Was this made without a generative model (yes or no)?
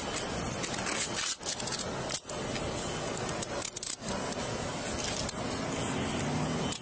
yes